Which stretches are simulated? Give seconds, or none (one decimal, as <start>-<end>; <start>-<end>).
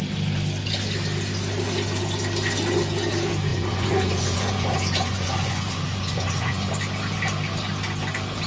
3.5-6.7